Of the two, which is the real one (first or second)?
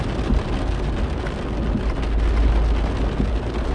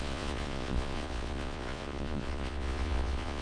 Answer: first